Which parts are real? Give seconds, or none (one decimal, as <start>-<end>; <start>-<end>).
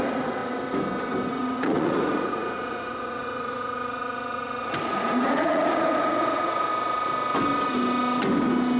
0.4-1.3; 6.7-8.8